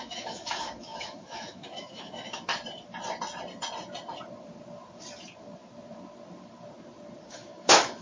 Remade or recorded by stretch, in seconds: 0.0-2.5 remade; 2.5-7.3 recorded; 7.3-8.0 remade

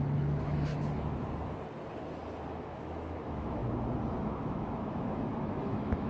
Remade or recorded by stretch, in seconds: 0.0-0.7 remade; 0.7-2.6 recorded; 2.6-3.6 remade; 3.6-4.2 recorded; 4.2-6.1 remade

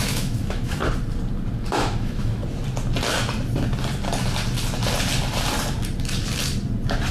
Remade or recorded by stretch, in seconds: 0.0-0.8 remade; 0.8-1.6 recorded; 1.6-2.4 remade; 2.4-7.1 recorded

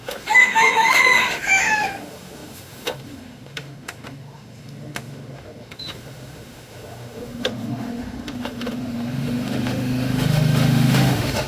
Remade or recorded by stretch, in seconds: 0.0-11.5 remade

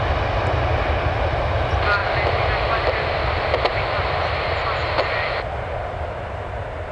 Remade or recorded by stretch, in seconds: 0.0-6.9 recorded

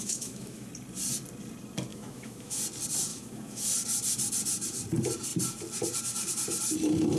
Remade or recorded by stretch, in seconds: 0.0-0.7 remade; 0.7-1.9 recorded; 1.9-2.6 remade; 2.6-3.1 recorded; 3.1-3.6 remade; 3.6-7.2 recorded